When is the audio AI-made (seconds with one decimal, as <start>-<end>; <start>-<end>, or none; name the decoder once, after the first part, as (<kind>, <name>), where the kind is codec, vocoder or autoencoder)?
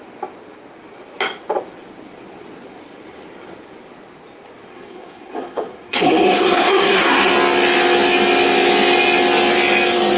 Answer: 4.7-7.3 (codec, SNAC)